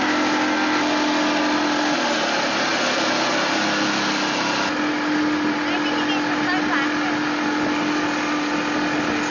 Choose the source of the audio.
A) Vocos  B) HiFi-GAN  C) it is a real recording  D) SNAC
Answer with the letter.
C